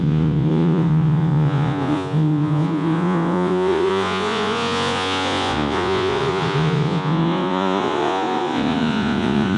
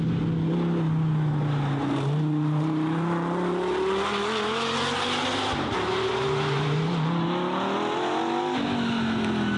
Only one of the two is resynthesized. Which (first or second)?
first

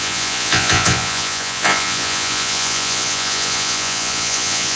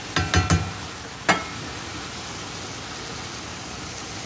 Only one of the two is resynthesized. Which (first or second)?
first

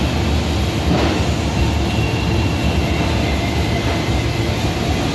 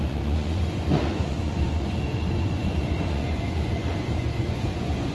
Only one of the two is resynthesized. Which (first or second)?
second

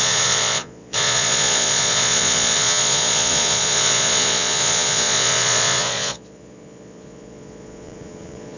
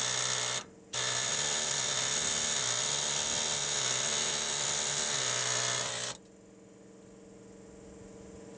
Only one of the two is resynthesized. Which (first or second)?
first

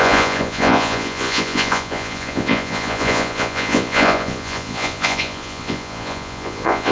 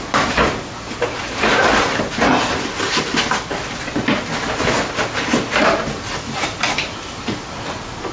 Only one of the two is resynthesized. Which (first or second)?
first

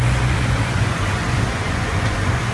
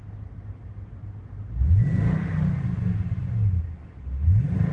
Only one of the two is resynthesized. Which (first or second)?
first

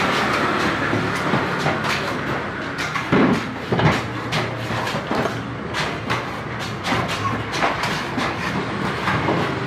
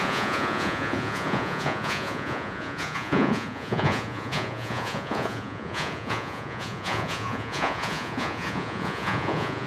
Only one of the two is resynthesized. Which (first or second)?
second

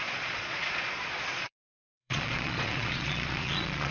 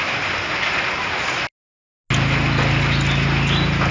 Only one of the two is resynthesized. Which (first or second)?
first